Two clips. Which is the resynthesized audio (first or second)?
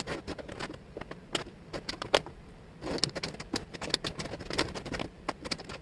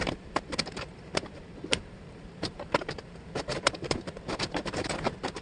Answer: second